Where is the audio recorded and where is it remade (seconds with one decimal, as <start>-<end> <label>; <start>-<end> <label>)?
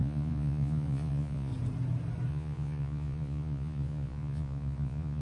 0.0-1.5 remade; 1.5-2.3 recorded; 2.3-5.2 remade